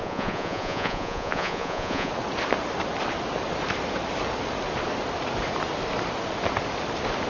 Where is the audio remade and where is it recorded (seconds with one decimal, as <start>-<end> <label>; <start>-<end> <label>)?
0.0-2.1 remade; 2.1-7.3 recorded

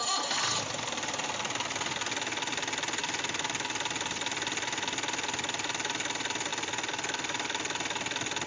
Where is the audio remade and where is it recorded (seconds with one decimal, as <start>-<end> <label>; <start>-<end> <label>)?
0.0-8.5 recorded

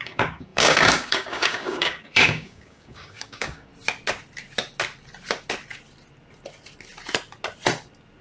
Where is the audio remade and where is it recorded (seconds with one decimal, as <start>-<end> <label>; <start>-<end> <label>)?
0.0-3.7 remade; 3.7-8.2 recorded